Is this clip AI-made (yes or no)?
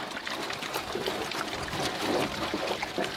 no